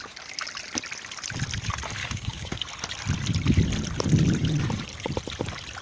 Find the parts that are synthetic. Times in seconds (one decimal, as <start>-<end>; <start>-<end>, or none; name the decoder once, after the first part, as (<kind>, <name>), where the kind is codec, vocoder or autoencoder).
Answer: 2.0-2.6 (codec, DAC)